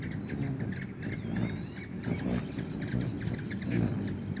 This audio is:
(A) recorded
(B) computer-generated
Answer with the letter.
A